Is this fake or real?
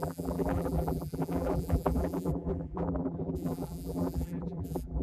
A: fake